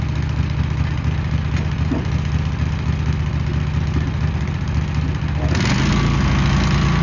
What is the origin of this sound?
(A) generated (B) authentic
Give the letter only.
B